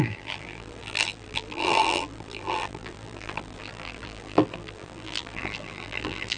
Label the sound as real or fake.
fake